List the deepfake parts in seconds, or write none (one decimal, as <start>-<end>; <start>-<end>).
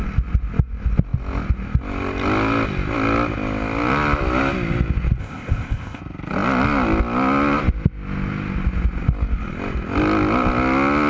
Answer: 5.2-6.0